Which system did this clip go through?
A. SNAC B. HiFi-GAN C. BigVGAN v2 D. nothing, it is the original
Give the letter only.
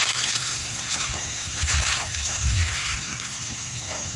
A